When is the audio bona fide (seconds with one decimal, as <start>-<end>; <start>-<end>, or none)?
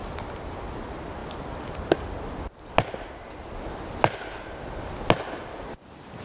0.0-6.2